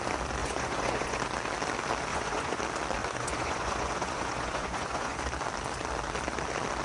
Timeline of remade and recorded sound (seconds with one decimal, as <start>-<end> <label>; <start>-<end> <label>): 0.0-0.4 recorded; 0.4-1.2 remade; 1.2-2.1 recorded; 2.1-2.6 remade; 2.6-3.0 recorded; 3.0-5.2 remade; 5.2-6.8 recorded